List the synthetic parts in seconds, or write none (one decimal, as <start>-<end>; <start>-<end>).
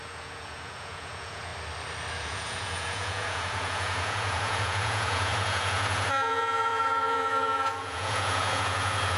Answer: 0.0-1.5; 2.1-9.2